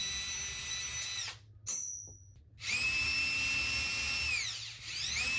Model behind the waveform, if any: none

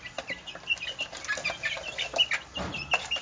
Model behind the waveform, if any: none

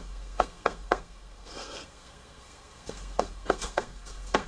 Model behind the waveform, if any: codec, SNAC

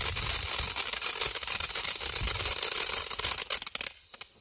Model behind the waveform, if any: none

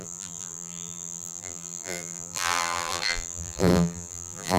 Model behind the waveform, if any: vocoder, BigVGAN v2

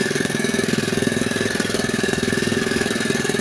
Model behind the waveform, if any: codec, SNAC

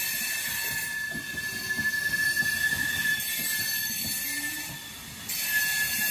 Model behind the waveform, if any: none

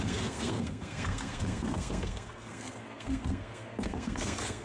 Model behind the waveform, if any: codec, SNAC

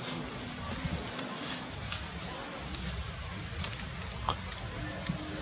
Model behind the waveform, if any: none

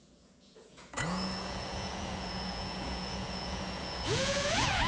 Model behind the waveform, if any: vocoder, Vocos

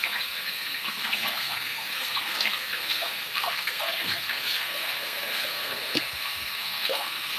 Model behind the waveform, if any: codec, SNAC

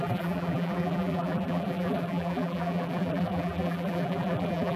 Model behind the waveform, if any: vocoder, BigVGAN v2